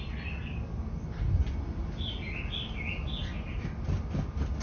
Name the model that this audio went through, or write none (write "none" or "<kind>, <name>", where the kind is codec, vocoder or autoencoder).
none